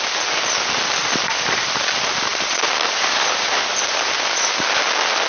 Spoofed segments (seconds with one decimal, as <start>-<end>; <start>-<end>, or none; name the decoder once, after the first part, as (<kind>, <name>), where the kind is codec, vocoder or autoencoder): 1.0-1.6 (vocoder, BigVGAN v2); 2.3-3.7